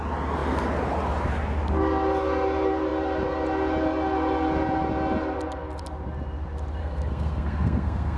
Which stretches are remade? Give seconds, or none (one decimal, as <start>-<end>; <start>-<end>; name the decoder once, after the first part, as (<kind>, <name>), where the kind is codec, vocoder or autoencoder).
6.8-8.2 (codec, SNAC)